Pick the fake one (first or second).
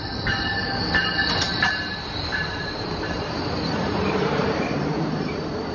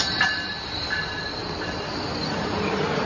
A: first